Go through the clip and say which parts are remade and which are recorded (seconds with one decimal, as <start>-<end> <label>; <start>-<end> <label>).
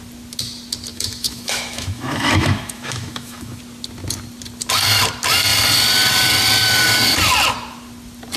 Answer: 0.0-0.9 recorded; 0.9-3.6 remade; 3.6-8.4 recorded